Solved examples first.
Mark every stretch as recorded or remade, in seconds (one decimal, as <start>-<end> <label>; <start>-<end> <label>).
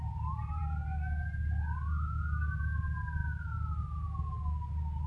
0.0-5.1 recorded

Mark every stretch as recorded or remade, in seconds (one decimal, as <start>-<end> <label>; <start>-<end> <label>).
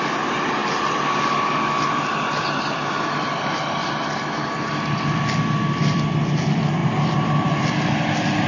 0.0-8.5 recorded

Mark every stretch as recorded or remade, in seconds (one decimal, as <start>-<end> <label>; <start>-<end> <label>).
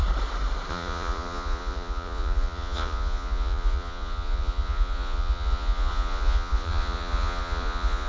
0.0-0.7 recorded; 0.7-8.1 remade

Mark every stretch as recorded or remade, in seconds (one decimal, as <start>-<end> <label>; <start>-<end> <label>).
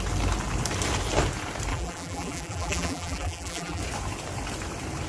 0.0-1.7 recorded; 1.7-3.8 remade; 3.8-5.1 recorded